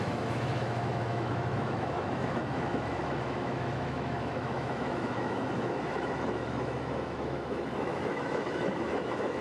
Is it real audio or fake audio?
fake